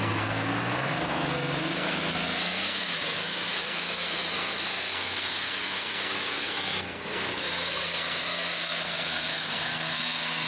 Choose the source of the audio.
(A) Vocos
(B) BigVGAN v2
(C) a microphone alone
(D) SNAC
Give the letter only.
D